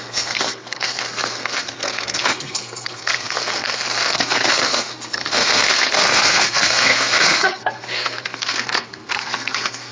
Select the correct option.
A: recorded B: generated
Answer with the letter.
B